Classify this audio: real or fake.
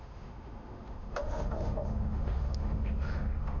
fake